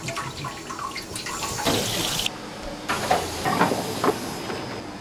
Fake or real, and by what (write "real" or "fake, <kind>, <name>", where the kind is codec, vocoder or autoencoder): real